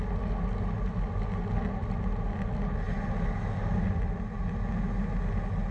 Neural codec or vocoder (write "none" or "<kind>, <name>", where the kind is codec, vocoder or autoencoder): none